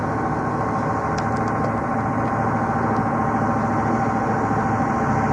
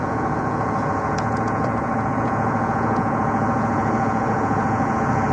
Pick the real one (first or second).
first